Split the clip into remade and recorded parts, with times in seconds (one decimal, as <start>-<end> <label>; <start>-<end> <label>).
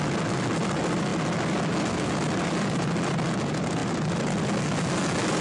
0.0-5.4 recorded